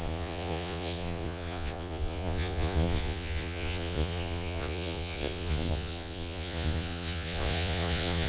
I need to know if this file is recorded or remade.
remade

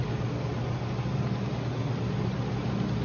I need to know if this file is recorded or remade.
recorded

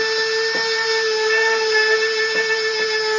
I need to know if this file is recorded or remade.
recorded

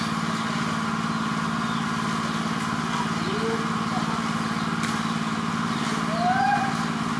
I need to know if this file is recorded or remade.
recorded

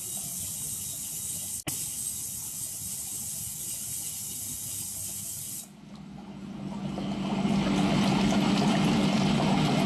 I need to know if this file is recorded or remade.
recorded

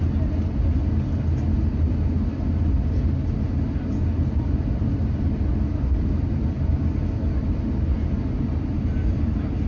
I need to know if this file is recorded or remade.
recorded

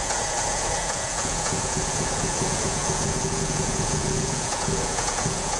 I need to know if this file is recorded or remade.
remade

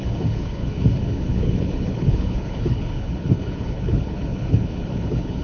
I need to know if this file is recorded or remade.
remade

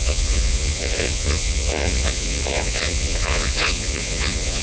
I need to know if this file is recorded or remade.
remade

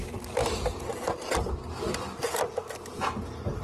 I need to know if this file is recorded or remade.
remade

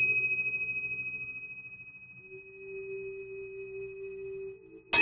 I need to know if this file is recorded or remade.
recorded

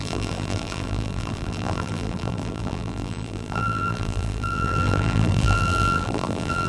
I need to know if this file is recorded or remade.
remade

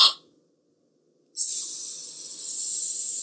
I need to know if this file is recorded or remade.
recorded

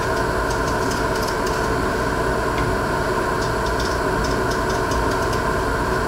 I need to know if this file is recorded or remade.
recorded